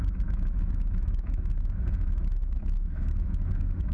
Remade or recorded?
remade